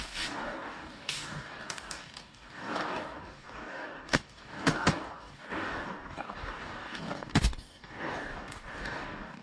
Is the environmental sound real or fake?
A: fake